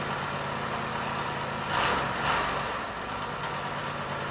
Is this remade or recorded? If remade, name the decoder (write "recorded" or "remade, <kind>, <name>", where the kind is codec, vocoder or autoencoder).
recorded